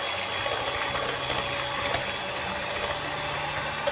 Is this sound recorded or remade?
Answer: recorded